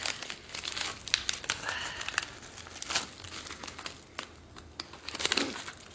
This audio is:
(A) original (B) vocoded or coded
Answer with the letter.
A